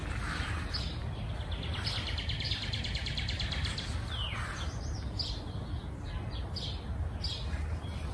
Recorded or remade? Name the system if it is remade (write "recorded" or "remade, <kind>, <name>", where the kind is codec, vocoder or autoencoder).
recorded